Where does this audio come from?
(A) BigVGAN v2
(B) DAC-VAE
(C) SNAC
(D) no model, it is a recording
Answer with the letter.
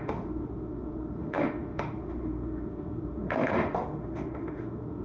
B